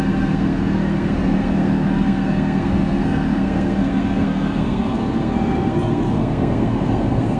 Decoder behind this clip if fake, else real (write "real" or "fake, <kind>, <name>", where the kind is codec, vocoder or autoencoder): fake, codec, SNAC